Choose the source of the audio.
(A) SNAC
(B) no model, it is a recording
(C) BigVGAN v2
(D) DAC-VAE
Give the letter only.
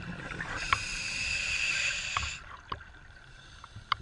B